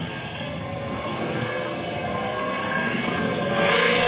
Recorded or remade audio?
remade